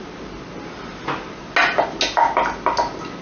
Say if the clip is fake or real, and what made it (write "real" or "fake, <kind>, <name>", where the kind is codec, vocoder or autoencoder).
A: real